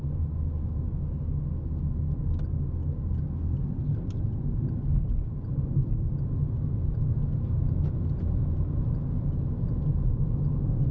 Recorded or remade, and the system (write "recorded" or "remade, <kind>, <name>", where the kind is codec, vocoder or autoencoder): recorded